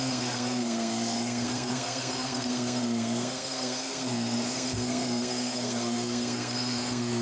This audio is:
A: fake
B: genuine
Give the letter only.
A